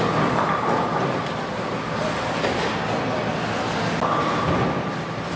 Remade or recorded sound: recorded